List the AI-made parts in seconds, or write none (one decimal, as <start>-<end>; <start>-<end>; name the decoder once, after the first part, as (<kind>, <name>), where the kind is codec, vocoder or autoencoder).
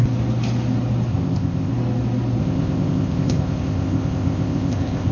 1.1-1.7 (codec, ZipCodec); 2.4-5.1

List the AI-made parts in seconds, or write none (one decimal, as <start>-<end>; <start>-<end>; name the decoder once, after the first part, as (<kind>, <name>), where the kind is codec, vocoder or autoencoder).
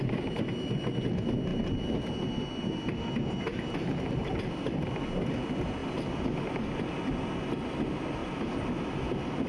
3.8-5.0 (vocoder, BigVGAN v2); 8.2-9.0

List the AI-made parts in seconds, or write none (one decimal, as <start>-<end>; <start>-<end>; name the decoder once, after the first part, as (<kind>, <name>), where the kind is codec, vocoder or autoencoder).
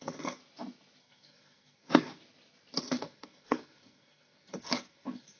0.0-0.4 (codec, SNAC); 1.0-2.2; 2.8-5.4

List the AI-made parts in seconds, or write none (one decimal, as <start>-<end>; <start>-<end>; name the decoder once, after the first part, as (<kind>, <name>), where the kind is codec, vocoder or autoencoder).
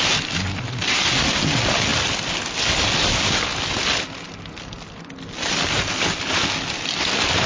none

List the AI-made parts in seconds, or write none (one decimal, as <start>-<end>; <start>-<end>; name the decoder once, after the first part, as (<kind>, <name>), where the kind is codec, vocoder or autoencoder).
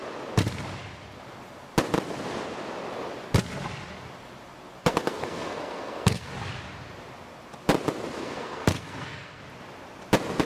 4.8-6.3 (codec, SNAC); 8.2-9.4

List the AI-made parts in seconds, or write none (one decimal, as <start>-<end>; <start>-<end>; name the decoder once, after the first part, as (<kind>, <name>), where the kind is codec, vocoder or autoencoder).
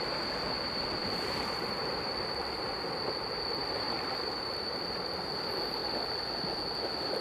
1.0-2.4 (vocoder, BigVGAN v2); 3.6-5.0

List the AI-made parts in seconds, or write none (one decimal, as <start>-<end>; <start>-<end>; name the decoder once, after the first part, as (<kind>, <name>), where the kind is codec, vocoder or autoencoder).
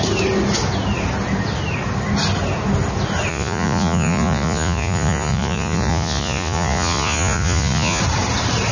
3.3-8.0 (vocoder, Vocos)